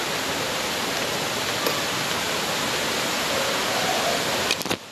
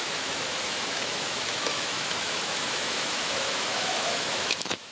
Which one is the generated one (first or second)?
second